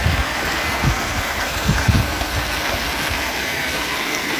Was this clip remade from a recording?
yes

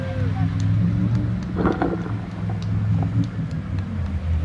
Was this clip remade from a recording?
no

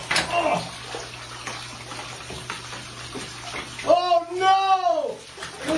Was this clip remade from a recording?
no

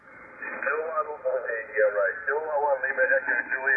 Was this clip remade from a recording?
no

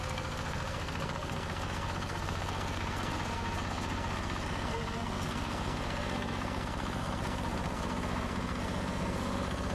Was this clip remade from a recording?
yes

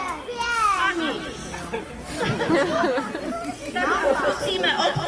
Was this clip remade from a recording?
no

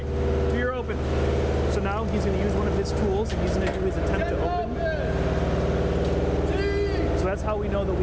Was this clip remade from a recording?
no